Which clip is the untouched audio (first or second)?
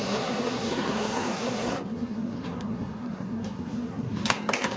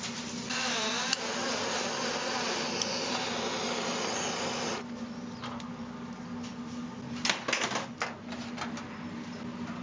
second